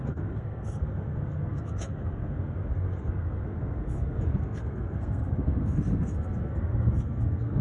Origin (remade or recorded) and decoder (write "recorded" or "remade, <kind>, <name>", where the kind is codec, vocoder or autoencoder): remade, codec, SNAC